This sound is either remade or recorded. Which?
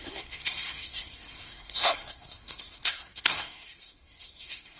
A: remade